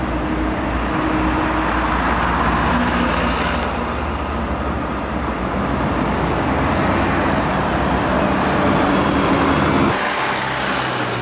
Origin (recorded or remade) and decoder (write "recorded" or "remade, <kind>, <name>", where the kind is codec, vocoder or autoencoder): recorded